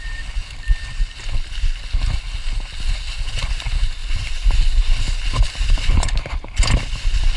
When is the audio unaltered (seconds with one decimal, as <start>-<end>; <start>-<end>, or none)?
0.0-4.0; 6.6-7.4